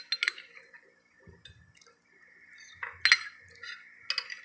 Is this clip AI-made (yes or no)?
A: no